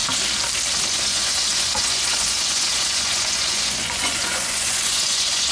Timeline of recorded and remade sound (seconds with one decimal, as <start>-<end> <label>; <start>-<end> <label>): 0.0-0.9 recorded; 0.9-5.5 remade